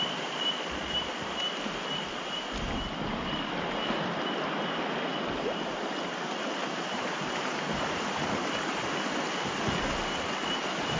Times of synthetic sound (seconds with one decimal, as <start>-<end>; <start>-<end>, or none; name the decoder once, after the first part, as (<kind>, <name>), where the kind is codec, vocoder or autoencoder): 5.1-5.7 (vocoder, BigVGAN v2); 6.6-8.3